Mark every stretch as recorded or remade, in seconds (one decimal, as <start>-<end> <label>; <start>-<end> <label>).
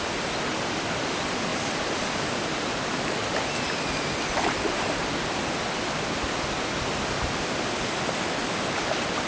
0.0-9.3 recorded